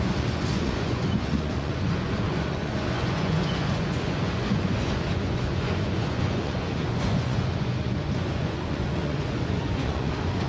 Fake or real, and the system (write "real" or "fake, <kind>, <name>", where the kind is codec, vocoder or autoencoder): fake, vocoder, Vocos